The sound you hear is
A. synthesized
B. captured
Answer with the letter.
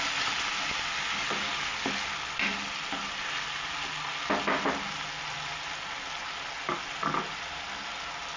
B